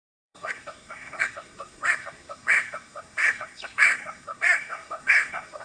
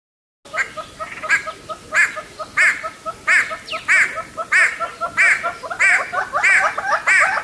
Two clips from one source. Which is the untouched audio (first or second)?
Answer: second